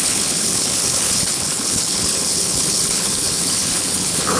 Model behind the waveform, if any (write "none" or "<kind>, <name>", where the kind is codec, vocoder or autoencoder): codec, HILCodec